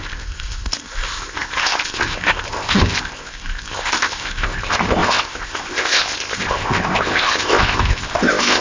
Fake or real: fake